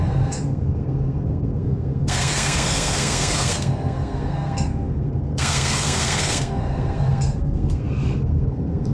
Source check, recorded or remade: remade